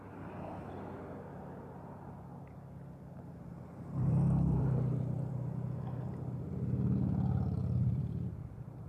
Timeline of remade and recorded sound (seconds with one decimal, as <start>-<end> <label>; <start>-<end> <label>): 0.0-3.5 recorded; 3.5-5.3 remade; 5.3-7.6 recorded; 7.6-8.9 remade

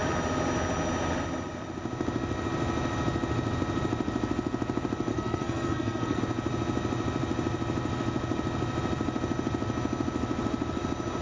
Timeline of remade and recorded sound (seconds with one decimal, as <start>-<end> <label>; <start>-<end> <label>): 0.0-5.1 recorded; 5.1-6.2 remade; 6.2-11.2 recorded

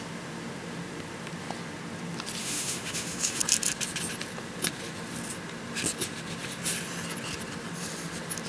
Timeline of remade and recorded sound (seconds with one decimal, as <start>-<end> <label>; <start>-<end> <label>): 0.0-2.4 recorded; 2.4-3.4 remade; 3.4-8.5 recorded